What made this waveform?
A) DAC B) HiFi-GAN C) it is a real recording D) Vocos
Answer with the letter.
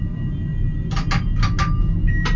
C